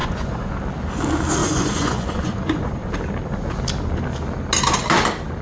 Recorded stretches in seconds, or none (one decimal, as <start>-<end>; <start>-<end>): 0.5-1.4; 2.9-5.4